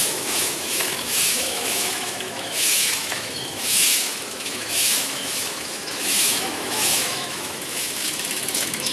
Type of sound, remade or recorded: remade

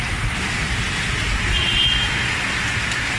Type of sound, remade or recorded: recorded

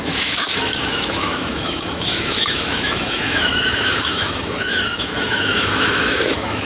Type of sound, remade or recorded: remade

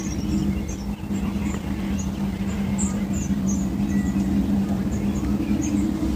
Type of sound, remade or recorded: recorded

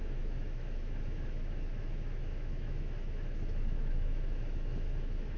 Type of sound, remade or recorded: remade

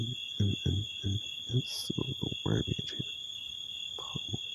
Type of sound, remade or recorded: recorded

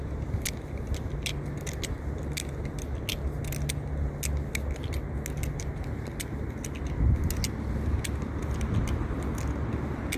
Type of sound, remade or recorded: recorded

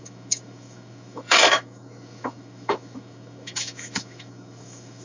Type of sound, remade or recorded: remade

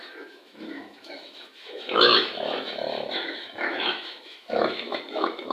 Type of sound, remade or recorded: remade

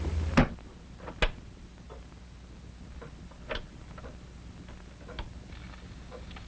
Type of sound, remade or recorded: recorded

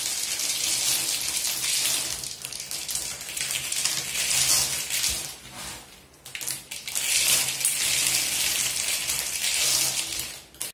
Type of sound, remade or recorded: recorded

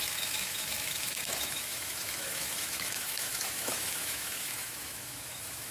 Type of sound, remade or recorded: remade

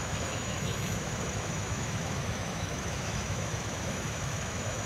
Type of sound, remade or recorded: remade